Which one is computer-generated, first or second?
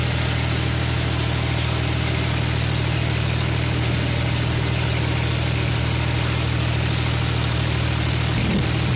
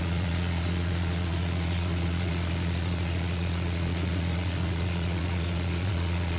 second